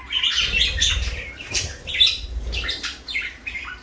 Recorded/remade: recorded